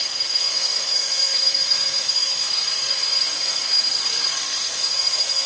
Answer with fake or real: fake